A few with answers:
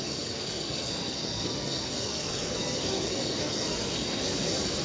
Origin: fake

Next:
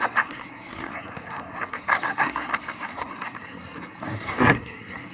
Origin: fake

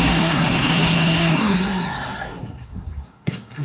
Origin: fake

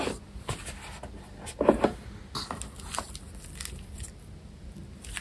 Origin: real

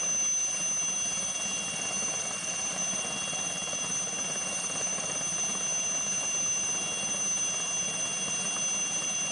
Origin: real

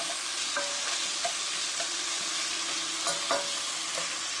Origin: real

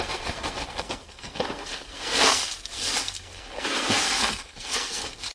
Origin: fake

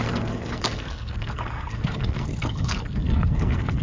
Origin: fake